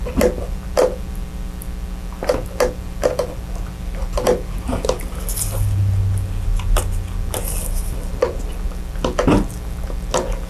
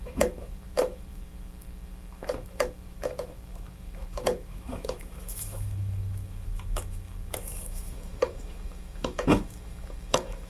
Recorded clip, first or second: first